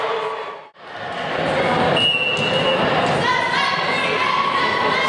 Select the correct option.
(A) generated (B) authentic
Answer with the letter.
B